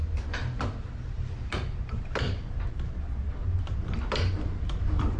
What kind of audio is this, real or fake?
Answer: real